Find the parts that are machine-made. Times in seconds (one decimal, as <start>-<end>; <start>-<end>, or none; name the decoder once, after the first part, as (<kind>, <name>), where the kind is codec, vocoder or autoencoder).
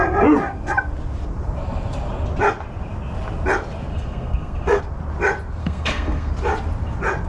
3.9-4.8 (codec, SNAC); 5.6-6.3